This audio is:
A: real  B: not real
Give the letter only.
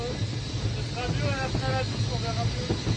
A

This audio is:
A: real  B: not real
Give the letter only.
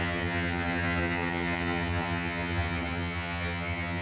B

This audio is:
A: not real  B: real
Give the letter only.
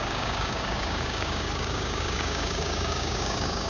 A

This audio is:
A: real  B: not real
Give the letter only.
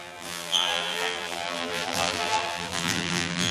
B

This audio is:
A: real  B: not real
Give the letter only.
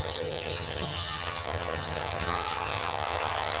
B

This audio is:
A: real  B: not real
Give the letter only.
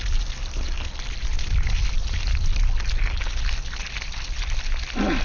A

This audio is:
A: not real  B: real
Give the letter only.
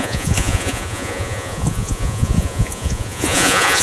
A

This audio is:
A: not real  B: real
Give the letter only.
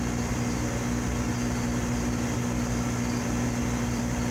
B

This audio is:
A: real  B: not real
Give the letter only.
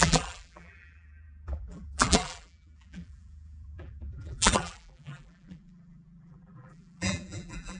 B